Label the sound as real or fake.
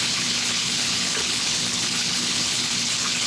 fake